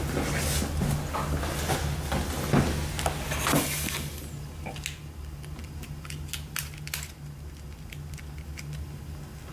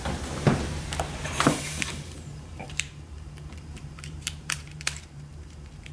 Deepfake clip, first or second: second